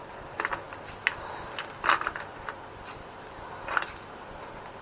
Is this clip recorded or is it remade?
recorded